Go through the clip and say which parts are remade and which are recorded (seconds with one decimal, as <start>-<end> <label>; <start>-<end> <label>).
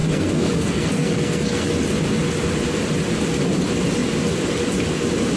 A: 0.0-1.7 remade; 1.7-5.4 recorded